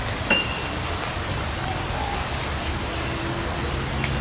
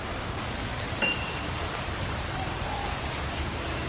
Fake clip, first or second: second